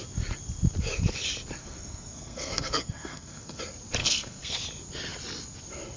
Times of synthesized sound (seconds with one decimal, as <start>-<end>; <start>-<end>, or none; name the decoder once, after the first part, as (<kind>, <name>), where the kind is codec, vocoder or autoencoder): 1.6-3.6 (codec, SNAC); 4.0-4.6